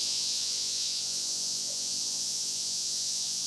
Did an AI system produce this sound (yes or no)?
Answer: yes